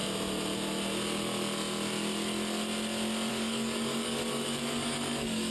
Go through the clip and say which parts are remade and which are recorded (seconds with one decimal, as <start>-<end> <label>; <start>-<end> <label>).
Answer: 0.0-3.3 recorded; 3.3-5.5 remade